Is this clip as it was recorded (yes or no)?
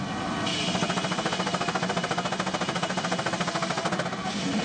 yes